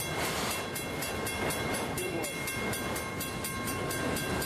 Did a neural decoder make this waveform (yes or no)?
no